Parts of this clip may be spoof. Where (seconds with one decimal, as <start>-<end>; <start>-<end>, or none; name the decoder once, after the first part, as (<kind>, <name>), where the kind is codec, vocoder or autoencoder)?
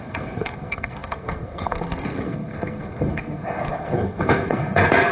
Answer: 0.0-5.1 (codec, SNAC)